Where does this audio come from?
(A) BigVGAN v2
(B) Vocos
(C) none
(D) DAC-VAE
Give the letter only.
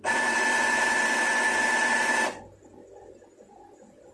C